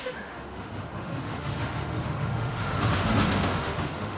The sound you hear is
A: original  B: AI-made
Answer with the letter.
B